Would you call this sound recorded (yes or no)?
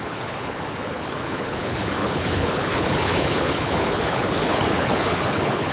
no